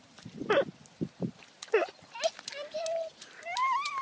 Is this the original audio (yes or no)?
yes